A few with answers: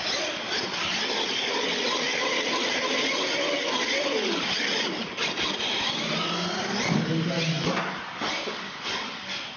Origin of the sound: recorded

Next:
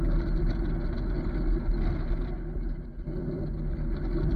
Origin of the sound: recorded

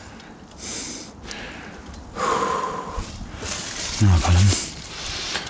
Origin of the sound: recorded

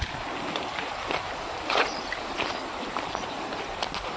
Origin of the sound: recorded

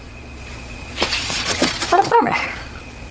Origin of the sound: remade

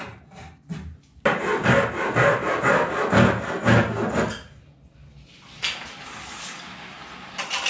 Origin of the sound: recorded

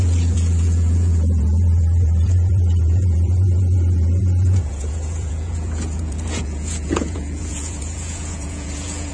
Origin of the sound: remade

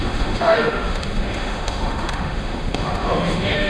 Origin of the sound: remade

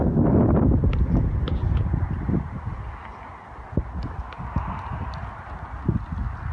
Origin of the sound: recorded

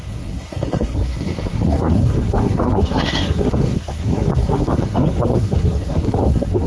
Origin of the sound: remade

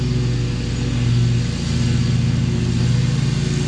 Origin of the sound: recorded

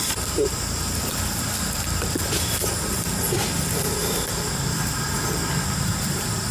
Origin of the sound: remade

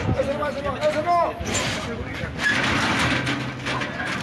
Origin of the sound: recorded